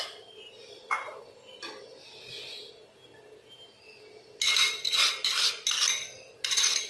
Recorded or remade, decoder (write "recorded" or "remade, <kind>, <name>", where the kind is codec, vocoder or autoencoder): recorded